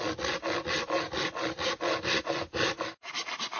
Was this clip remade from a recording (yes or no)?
no